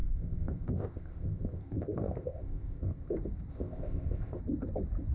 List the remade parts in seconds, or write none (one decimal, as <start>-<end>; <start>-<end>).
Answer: 0.0-3.1; 3.5-4.4